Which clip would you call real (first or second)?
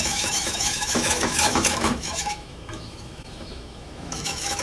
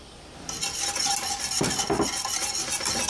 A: second